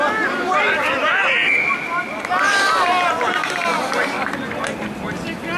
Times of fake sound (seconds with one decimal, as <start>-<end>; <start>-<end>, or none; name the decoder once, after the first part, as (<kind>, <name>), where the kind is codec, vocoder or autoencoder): none